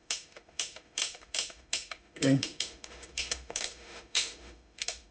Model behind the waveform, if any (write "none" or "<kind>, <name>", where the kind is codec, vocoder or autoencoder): autoencoder, DAC-VAE